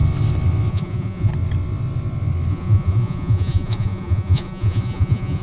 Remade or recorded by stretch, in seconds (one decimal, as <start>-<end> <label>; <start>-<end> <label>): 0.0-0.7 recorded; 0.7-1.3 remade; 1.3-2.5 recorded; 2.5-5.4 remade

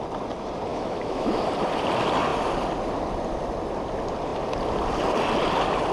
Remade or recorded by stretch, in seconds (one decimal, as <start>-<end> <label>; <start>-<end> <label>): 0.0-0.7 recorded; 0.7-1.5 remade; 1.5-5.9 recorded

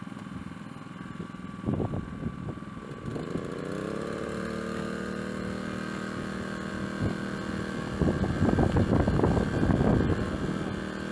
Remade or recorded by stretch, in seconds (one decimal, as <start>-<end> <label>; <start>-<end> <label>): 0.0-11.1 recorded

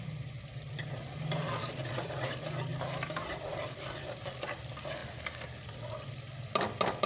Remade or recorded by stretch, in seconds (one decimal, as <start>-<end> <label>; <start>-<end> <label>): 0.0-1.6 recorded; 1.6-2.3 remade; 2.3-7.1 recorded

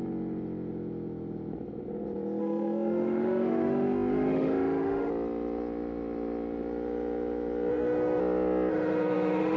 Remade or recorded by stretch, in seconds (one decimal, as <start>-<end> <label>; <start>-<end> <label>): 0.0-2.4 recorded; 2.4-5.1 remade; 5.1-7.7 recorded; 7.7-8.2 remade; 8.2-8.7 recorded; 8.7-9.6 remade

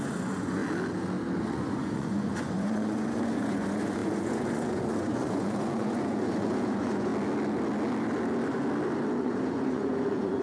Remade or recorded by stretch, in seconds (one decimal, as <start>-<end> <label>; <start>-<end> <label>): 0.0-0.6 remade; 0.6-1.4 recorded; 1.4-7.1 remade; 7.1-9.2 recorded; 9.2-10.4 remade